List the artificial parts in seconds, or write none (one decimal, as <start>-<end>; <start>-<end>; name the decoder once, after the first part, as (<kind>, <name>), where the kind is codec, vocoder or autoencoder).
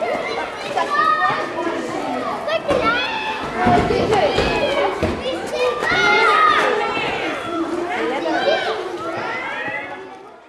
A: none